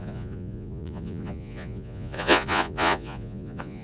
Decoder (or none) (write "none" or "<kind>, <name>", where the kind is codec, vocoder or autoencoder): vocoder, Vocos